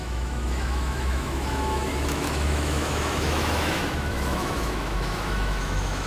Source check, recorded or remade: remade